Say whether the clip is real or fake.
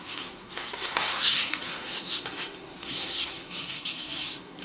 fake